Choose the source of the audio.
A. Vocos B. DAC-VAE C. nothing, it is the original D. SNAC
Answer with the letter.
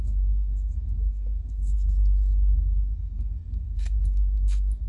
D